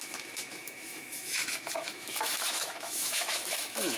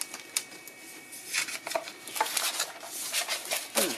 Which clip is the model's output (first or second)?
first